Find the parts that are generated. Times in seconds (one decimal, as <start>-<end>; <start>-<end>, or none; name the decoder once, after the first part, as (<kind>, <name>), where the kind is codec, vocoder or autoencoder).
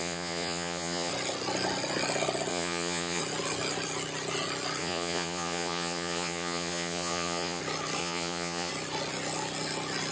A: 0.0-1.1 (vocoder, Vocos); 2.5-3.2; 4.8-7.6; 8.0-8.7